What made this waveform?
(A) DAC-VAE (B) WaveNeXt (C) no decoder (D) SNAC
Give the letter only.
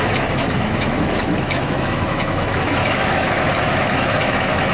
A